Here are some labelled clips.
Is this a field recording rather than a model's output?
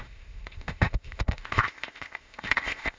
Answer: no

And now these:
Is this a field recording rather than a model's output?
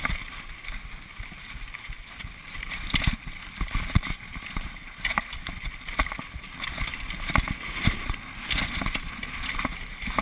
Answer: yes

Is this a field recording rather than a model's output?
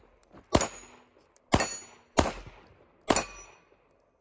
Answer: yes